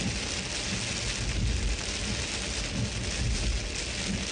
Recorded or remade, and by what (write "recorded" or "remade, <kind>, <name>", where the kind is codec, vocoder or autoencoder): recorded